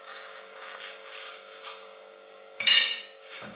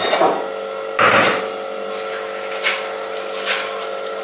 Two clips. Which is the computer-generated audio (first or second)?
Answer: first